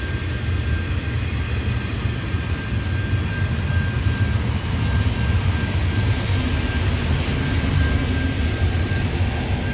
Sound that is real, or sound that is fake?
real